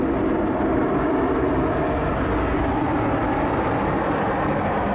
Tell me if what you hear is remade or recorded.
recorded